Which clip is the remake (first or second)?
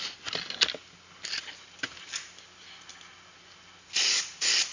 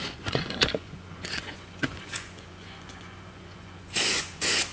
second